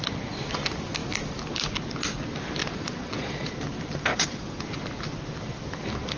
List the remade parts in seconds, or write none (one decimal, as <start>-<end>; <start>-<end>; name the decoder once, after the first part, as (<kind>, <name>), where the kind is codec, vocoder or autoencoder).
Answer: 2.6-3.5 (vocoder, Vocos); 4.1-4.6